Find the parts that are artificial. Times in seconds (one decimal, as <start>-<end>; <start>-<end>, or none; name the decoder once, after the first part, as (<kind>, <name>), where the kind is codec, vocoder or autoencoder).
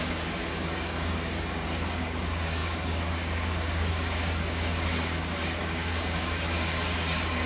0.0-7.5 (codec, DAC)